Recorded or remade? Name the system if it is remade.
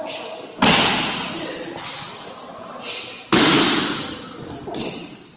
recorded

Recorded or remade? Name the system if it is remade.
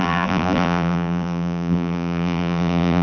remade, vocoder, BigVGAN v2